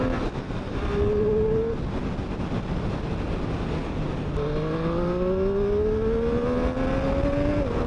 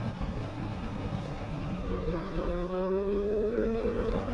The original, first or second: first